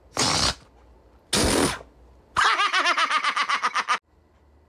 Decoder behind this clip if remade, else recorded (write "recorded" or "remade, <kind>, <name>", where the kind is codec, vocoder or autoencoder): recorded